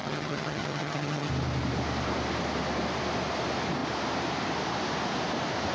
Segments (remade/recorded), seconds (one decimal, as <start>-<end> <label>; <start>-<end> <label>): 0.0-1.3 remade; 1.3-5.7 recorded